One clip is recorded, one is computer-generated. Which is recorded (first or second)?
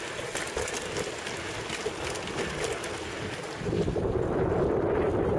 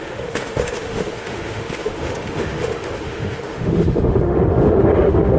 first